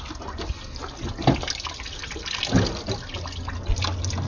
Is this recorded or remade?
recorded